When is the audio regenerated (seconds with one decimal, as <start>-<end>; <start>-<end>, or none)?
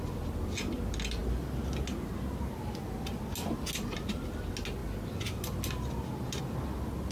none